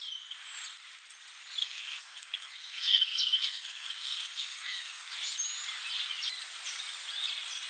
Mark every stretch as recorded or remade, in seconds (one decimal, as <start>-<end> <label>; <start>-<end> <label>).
0.0-1.6 recorded; 1.6-5.2 remade; 5.2-7.7 recorded